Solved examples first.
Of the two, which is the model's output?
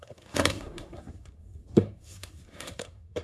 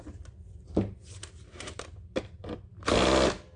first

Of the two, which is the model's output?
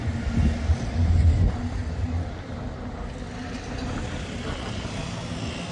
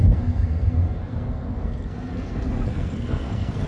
second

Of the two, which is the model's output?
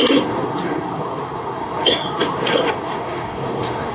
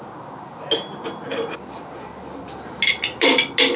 first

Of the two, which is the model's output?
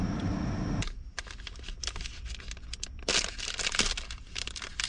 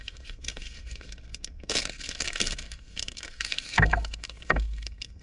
second